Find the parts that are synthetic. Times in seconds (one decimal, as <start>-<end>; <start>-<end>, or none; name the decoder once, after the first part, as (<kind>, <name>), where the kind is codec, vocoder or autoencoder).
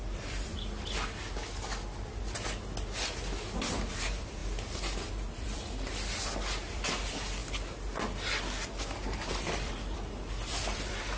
0.0-0.5 (vocoder, BigVGAN v2); 3.9-4.4; 5.1-7.4; 9.3-11.2